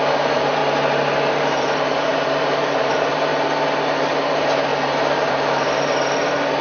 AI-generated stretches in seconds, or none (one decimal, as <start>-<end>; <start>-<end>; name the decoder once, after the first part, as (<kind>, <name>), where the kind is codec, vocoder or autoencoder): 0.0-0.6 (vocoder, BigVGAN v2); 1.3-3.3; 4.3-6.6